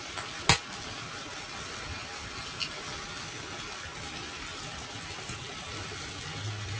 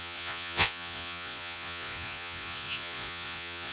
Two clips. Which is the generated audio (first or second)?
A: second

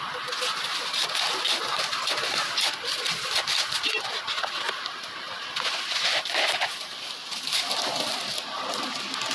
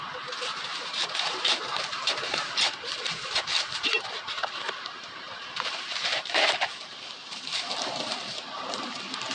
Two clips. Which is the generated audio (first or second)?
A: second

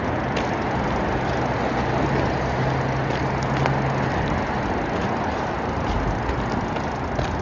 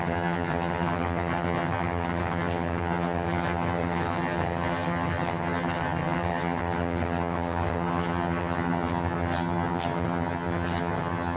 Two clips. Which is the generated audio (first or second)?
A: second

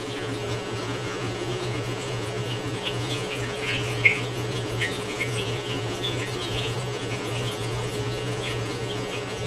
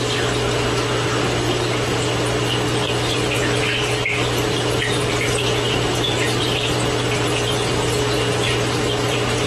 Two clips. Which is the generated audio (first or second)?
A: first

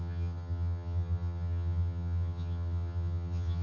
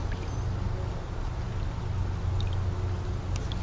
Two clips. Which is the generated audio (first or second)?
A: first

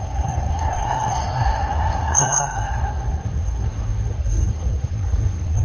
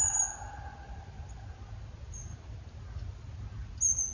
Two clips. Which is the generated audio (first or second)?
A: first